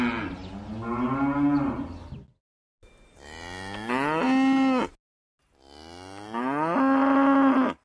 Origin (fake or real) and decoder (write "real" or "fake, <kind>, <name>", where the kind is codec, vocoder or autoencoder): real